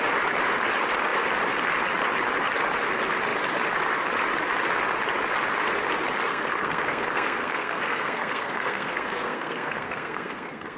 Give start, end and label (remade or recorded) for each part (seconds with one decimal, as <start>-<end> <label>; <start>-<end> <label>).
0.0-6.3 recorded; 6.3-10.8 remade